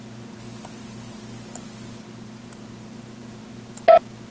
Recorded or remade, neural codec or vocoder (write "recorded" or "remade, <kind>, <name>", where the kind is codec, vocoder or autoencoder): recorded